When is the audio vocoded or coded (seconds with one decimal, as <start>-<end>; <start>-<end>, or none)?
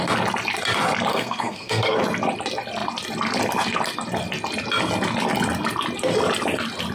1.1-2.0